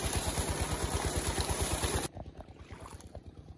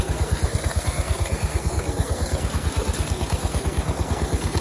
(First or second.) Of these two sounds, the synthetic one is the second